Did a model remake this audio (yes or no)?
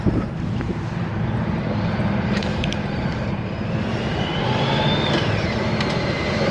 yes